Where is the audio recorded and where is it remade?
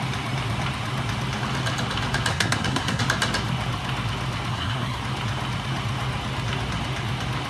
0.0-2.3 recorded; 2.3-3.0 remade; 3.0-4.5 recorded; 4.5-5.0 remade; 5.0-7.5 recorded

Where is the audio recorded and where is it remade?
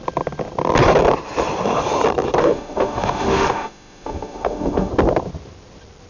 0.0-2.4 recorded; 2.4-4.9 remade; 4.9-6.1 recorded